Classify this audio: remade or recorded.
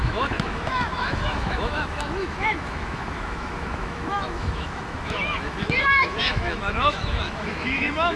remade